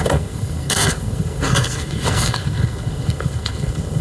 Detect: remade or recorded remade